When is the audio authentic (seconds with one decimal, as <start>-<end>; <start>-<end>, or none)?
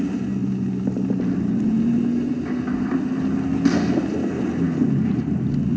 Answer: 0.0-5.8